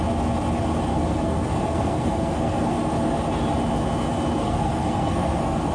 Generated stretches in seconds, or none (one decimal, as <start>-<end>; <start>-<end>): 0.9-2.8; 4.4-5.7